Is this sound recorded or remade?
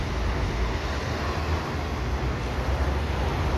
recorded